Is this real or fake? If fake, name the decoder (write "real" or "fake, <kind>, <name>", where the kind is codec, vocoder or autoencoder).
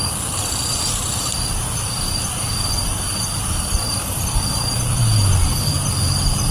real